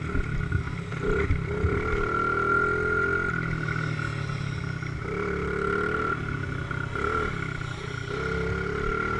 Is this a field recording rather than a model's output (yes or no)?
yes